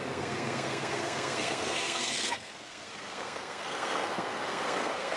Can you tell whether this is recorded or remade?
remade